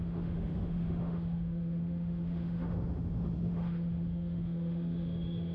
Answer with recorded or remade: remade